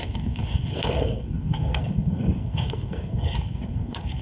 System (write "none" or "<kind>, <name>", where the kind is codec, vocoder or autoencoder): codec, SNAC